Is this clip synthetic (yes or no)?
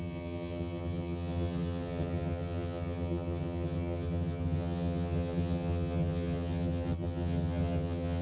yes